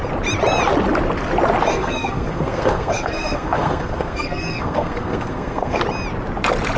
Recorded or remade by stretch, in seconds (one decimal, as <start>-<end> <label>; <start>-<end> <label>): 0.0-1.7 recorded; 1.7-5.8 remade; 5.8-6.8 recorded